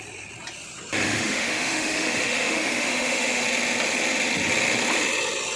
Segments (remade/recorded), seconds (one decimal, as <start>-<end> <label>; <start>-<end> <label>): 0.0-1.0 recorded; 1.0-3.4 remade; 3.4-5.6 recorded

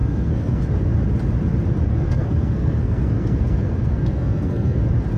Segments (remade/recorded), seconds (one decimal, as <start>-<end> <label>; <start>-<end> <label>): 0.0-0.6 remade; 0.6-1.9 recorded; 1.9-4.8 remade; 4.8-5.2 recorded